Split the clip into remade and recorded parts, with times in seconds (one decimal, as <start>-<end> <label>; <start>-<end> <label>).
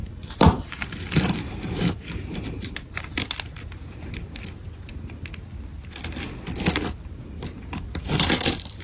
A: 0.0-3.1 remade; 3.1-8.8 recorded